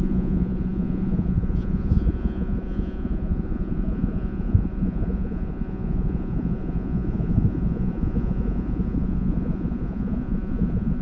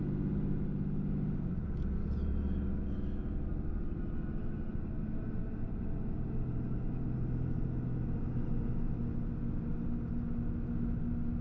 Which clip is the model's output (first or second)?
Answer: first